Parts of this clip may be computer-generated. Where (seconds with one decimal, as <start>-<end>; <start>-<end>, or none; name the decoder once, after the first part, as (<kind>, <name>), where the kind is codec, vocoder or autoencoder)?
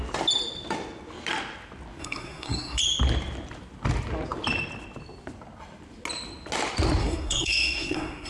2.0-2.8 (codec, SNAC); 7.0-8.3